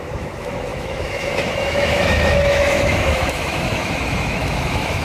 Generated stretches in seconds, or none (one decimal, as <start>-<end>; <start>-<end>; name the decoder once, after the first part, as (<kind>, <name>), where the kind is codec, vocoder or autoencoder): 0.0-5.0 (autoencoder, DAC-VAE)